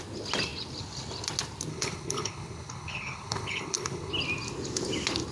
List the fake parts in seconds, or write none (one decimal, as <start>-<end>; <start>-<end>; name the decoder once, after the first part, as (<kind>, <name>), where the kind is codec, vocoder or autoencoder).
1.7-4.1 (codec, HILCodec)